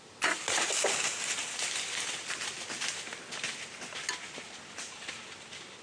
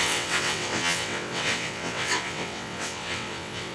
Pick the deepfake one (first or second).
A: second